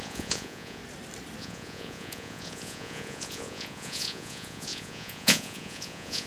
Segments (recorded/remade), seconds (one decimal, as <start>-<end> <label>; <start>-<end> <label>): 0.0-0.8 remade; 0.8-1.4 recorded; 1.4-6.3 remade